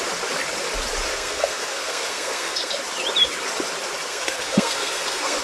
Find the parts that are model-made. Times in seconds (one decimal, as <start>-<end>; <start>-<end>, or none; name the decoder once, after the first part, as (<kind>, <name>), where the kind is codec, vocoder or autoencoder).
1.1-2.7 (codec, SNAC); 4.1-5.4